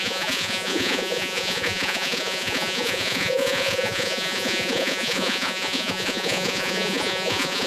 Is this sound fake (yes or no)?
yes